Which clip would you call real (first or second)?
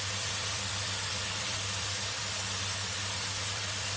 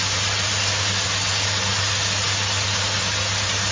second